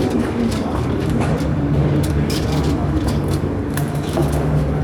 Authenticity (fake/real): fake